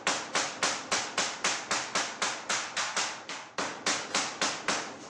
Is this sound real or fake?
real